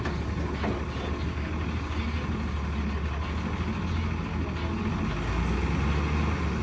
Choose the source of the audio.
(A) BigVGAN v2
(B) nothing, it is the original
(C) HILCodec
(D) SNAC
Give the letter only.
B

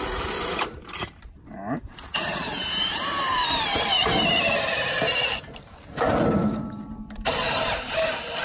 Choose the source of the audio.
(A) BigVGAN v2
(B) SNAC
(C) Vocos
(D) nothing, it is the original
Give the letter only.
A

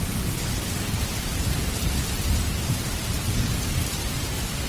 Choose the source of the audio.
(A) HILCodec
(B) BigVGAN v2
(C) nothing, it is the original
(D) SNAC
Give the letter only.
B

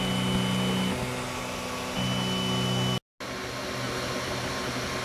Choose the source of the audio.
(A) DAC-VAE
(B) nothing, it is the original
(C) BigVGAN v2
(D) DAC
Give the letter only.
B